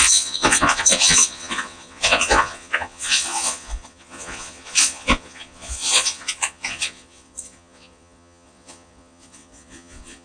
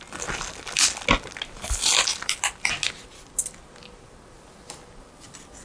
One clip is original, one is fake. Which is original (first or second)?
second